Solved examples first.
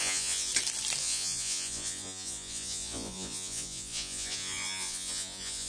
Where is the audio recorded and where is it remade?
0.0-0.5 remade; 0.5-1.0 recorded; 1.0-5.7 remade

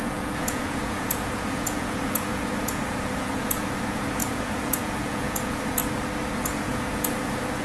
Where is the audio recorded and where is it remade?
0.0-5.8 remade; 5.8-6.3 recorded; 6.3-7.6 remade